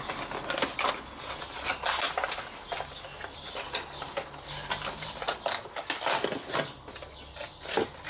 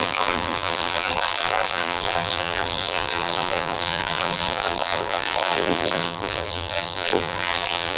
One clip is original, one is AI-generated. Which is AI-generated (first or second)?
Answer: second